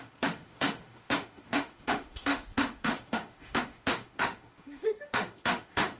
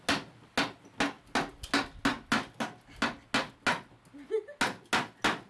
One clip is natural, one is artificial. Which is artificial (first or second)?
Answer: first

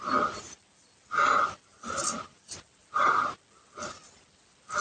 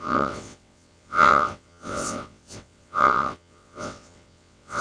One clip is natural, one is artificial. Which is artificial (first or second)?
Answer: second